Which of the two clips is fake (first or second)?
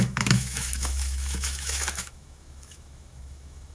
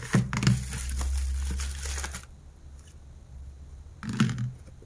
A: first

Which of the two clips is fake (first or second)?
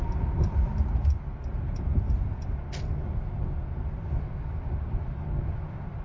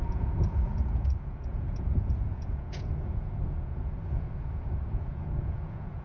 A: second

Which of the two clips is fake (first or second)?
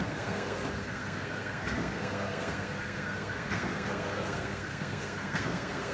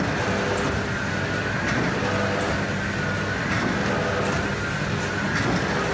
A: first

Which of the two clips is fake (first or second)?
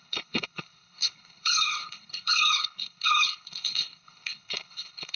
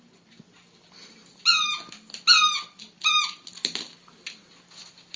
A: first